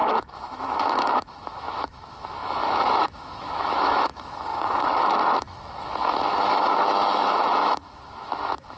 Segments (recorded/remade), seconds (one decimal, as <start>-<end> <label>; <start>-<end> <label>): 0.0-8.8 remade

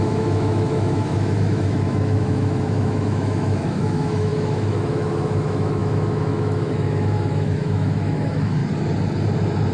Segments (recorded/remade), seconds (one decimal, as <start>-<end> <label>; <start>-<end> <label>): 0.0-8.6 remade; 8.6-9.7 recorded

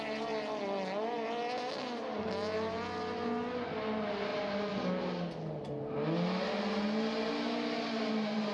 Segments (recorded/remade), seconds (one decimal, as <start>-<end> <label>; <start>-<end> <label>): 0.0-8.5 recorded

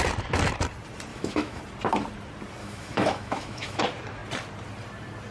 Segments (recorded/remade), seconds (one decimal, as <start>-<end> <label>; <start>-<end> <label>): 0.0-1.1 recorded; 1.1-1.6 remade; 1.6-2.6 recorded; 2.6-3.8 remade; 3.8-5.3 recorded